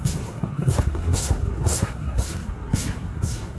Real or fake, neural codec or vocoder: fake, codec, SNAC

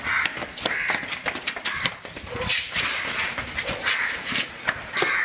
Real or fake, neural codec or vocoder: real